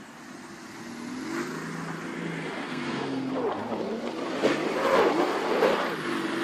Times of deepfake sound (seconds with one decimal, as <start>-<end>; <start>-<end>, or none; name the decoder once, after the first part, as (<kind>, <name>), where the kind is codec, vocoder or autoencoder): 2.6-3.3 (codec, SNAC)